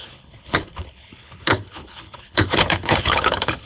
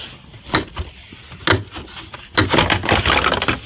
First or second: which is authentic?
second